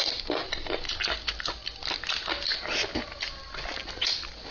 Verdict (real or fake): real